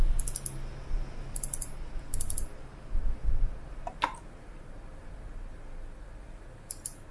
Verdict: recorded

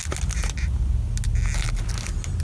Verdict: recorded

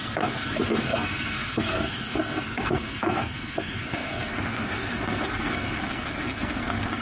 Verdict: remade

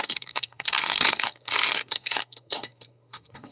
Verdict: remade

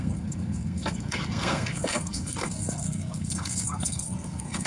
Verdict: remade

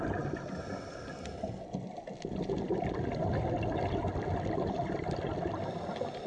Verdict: recorded